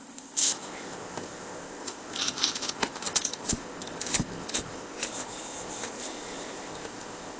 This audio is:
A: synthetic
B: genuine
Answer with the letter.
A